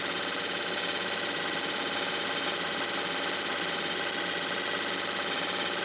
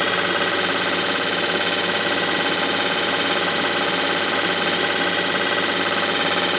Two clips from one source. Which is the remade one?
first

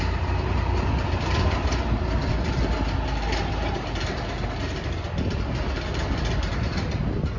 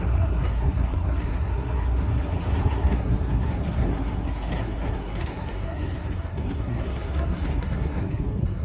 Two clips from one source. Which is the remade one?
second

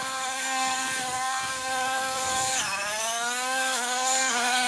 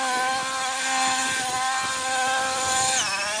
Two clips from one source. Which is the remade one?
first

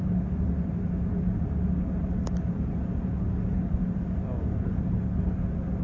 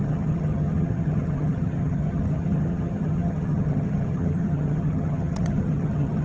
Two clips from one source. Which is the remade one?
second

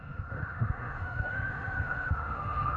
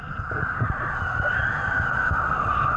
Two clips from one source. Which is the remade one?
first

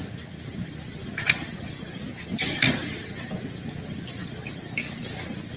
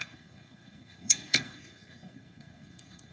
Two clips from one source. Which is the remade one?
second